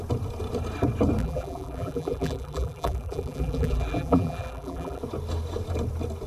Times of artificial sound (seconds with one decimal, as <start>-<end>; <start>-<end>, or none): 1.2-5.0